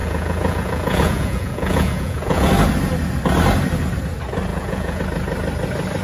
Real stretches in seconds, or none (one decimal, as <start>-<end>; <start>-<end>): 2.5-4.5; 5.0-6.0